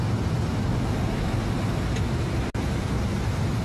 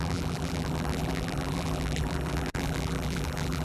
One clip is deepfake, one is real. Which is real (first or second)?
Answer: first